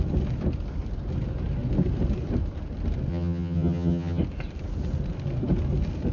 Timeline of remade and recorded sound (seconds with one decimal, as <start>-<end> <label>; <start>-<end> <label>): 0.0-3.1 recorded; 3.1-4.2 remade; 4.2-6.1 recorded